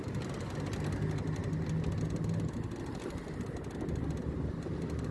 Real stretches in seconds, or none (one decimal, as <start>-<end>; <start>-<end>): 0.0-5.1